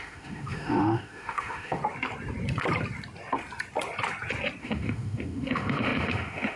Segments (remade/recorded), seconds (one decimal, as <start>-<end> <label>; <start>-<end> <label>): 0.0-1.8 remade; 1.8-4.6 recorded; 4.6-6.6 remade